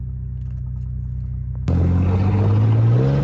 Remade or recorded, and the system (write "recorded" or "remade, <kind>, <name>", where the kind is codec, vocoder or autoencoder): recorded